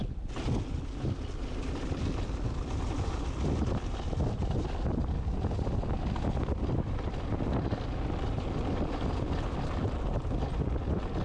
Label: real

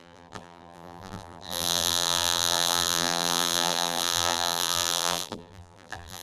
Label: fake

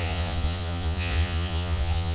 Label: fake